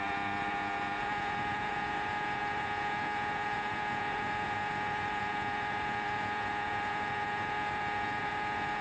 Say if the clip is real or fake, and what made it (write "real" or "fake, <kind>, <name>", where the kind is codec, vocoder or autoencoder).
fake, vocoder, Vocos